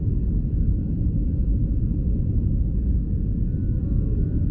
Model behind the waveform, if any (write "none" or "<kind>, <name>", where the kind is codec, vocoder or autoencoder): none